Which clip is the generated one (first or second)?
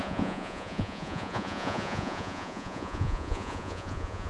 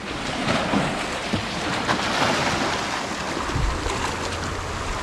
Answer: first